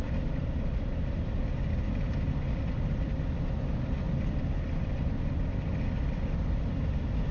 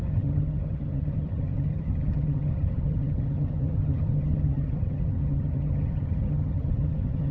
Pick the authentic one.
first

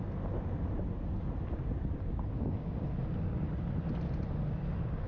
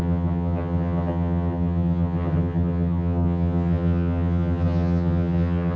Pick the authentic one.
first